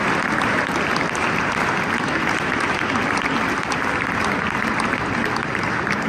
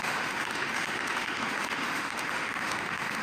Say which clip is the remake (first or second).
second